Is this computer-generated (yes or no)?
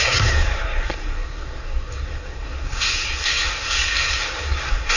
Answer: yes